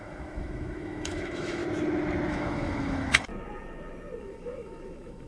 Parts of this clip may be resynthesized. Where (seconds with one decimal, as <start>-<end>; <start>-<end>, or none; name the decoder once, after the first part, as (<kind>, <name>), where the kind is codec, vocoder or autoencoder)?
0.0-1.6 (autoencoder, DAC-VAE); 2.3-3.3; 4.2-5.3